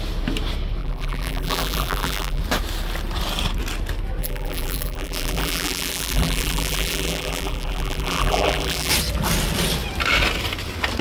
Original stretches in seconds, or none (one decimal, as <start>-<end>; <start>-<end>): 0.0-0.8; 2.4-4.2; 8.9-11.0